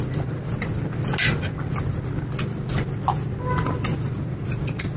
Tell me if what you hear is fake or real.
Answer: real